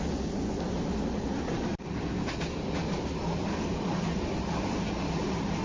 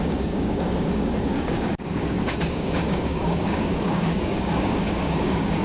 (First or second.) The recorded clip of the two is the first